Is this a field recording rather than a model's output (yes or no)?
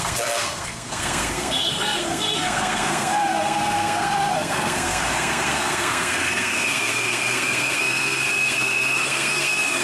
no